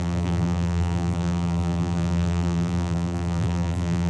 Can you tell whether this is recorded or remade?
remade